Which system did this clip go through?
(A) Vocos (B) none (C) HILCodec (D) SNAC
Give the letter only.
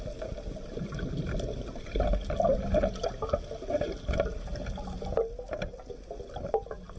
B